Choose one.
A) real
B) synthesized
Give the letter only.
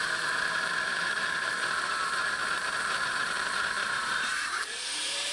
B